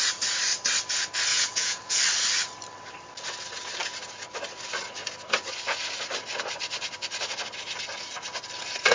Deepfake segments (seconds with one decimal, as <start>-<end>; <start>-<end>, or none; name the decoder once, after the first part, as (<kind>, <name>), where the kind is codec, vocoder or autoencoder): 1.3-2.0 (vocoder, Vocos)

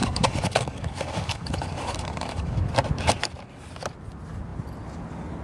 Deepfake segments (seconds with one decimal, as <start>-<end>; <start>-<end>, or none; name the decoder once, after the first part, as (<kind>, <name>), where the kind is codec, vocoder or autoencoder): 0.0-2.7 (codec, DAC)

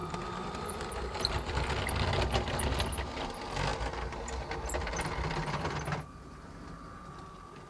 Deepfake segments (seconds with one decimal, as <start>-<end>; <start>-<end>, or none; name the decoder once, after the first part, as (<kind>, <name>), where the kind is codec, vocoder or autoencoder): none